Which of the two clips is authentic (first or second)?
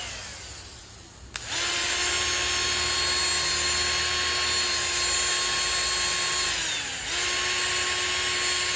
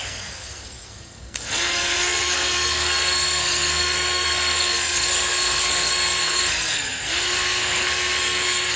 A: first